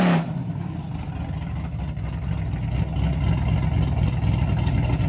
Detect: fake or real real